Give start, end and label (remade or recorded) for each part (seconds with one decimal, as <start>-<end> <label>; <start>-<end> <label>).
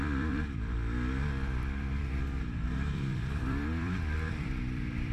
0.0-5.1 remade